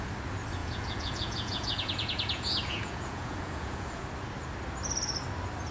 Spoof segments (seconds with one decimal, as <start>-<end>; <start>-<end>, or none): 0.6-4.0